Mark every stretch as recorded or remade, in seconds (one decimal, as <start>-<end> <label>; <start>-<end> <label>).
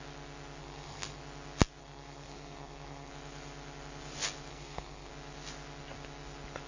0.0-0.6 recorded; 0.6-1.2 remade; 1.2-1.8 recorded; 1.8-3.1 remade; 3.1-4.5 recorded; 4.5-5.1 remade; 5.1-6.7 recorded